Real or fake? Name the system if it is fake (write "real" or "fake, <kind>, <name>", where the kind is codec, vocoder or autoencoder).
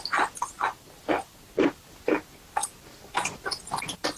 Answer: real